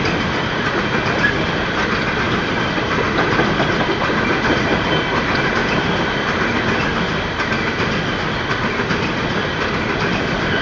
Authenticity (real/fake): real